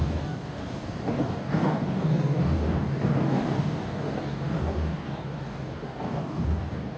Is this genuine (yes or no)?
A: no